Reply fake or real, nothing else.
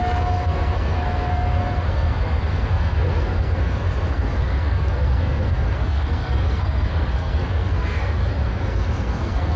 fake